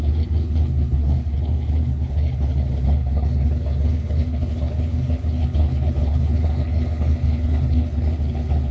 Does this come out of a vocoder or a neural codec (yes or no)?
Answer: yes